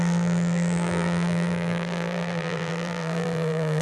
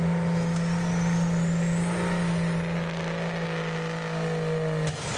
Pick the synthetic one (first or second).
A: first